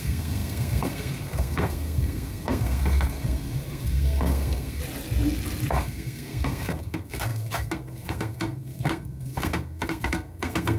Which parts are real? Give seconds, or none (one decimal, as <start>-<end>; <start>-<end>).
4.8-5.7